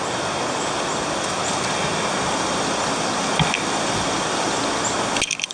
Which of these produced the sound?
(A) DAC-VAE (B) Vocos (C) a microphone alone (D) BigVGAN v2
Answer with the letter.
C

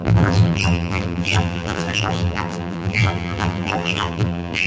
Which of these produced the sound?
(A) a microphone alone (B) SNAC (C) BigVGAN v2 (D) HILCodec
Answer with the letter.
C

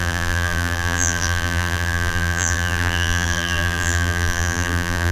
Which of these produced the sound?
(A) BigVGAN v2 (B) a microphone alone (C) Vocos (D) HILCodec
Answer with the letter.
A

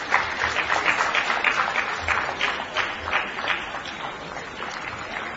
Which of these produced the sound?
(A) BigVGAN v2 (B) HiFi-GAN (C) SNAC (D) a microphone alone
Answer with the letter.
A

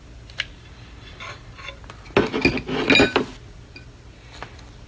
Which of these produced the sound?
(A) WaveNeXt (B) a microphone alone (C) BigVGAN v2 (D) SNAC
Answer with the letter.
B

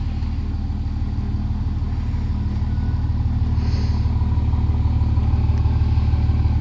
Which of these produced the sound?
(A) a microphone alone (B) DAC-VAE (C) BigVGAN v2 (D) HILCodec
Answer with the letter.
A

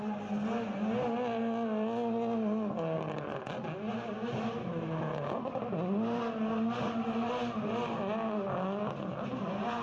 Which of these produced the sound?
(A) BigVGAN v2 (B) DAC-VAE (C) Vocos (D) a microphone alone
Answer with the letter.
D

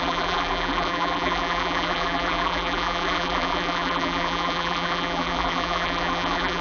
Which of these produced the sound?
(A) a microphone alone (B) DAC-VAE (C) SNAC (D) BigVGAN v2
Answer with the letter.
D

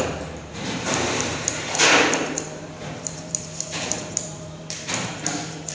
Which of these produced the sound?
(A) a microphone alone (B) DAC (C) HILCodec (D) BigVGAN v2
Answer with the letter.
D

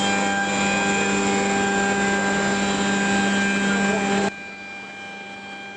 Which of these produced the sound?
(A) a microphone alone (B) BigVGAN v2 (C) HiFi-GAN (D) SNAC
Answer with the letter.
A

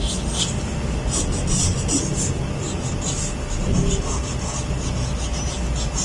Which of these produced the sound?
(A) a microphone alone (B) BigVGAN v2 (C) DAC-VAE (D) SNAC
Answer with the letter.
A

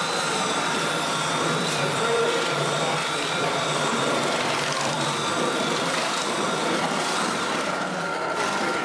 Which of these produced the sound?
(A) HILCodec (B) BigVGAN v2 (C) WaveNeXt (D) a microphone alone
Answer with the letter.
B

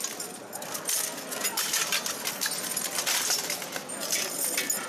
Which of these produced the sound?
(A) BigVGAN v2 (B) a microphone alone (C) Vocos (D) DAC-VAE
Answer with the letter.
B